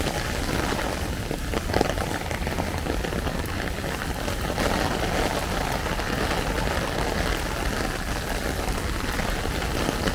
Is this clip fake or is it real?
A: real